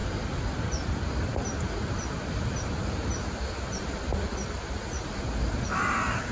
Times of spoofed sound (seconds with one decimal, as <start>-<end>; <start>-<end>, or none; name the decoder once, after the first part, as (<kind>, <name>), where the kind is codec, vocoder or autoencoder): none